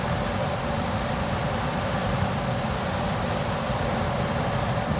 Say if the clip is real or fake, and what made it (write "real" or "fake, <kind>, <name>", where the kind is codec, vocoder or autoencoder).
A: fake, vocoder, BigVGAN v2